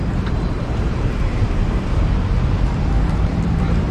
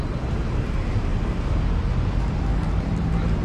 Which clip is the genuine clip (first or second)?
second